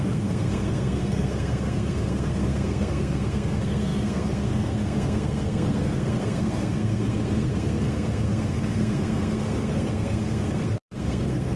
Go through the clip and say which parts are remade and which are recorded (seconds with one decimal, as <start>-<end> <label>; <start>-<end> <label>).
0.0-11.6 remade